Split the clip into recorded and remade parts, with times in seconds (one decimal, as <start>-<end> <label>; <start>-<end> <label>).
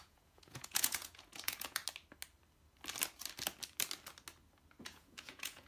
0.0-1.8 remade; 1.8-4.8 recorded; 4.8-5.7 remade